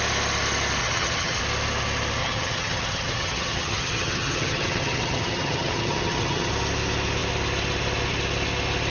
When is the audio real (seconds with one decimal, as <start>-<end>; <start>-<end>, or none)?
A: 0.0-0.8; 1.4-2.2; 6.5-8.9